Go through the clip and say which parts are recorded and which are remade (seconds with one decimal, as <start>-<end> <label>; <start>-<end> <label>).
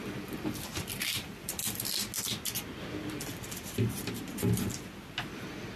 0.0-2.0 remade; 2.0-5.8 recorded